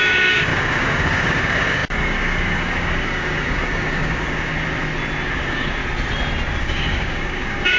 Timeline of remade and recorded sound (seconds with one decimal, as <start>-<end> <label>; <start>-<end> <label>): 0.0-4.5 remade; 4.5-5.3 recorded; 5.3-5.8 remade; 5.8-6.6 recorded; 6.6-7.8 remade